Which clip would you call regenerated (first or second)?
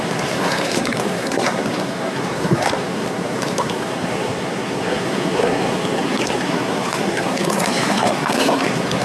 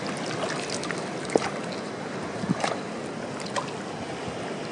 first